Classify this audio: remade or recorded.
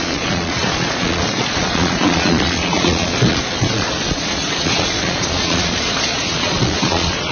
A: remade